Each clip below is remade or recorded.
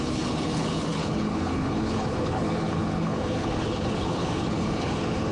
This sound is remade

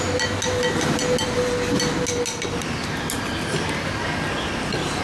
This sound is recorded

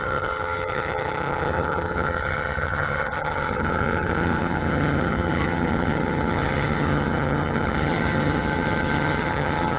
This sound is remade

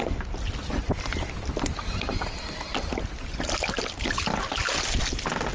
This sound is recorded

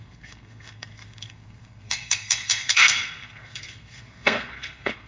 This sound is remade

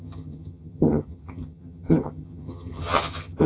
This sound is remade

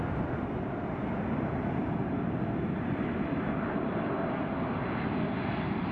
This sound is recorded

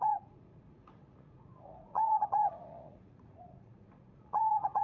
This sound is remade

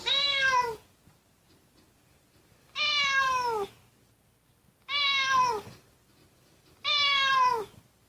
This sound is recorded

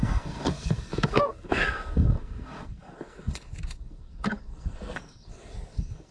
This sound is remade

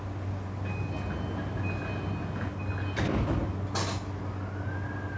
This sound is recorded